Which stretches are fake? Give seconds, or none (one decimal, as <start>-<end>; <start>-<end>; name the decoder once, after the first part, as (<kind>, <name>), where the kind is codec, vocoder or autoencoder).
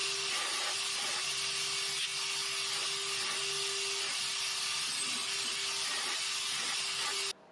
none